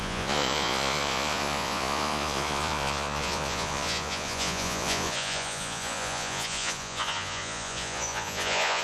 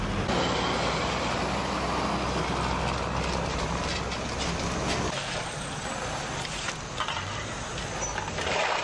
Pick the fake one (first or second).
first